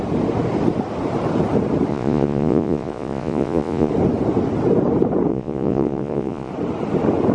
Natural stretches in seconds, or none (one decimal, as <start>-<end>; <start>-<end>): 0.0-1.9; 3.9-5.3; 6.5-7.3